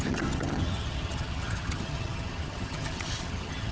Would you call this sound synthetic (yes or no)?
yes